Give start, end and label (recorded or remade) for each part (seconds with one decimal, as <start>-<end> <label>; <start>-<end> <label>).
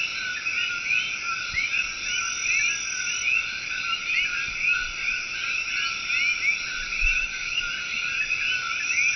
0.0-7.0 recorded; 7.0-7.6 remade; 7.6-9.2 recorded